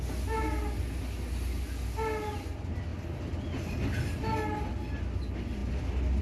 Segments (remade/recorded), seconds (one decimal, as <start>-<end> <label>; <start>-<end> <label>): 0.0-6.2 recorded